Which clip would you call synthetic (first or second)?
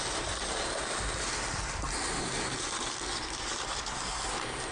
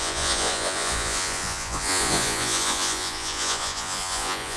second